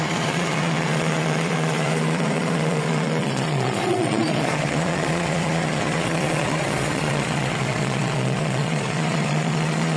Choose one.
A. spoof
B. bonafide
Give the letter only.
A